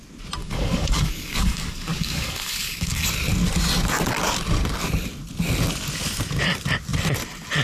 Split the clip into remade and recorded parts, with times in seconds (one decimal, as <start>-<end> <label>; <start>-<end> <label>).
0.0-0.4 recorded; 0.4-3.1 remade; 3.1-7.6 recorded